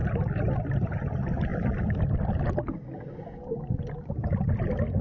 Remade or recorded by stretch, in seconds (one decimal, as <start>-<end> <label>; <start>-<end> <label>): 0.0-5.0 recorded